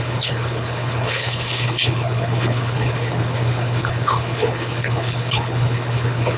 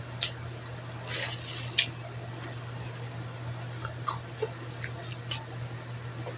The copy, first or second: first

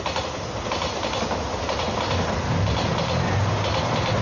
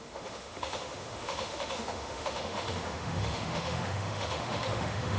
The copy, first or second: second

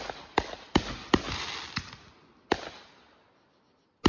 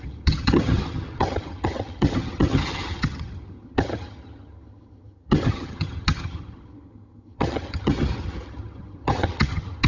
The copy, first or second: second